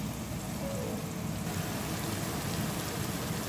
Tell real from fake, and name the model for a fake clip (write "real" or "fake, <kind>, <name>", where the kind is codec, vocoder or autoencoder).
real